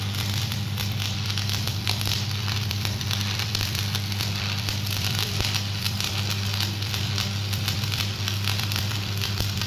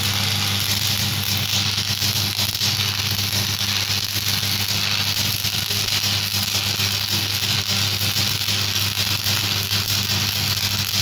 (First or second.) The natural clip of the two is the second